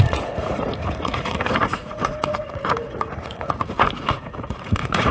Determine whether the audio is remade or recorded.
remade